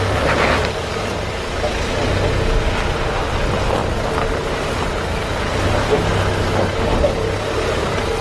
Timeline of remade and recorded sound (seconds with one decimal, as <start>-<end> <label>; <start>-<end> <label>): 0.0-8.2 recorded